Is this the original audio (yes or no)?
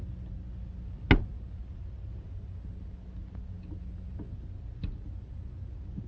yes